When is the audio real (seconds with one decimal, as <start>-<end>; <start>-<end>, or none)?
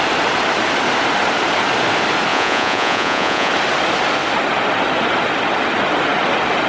0.0-2.3; 3.5-6.7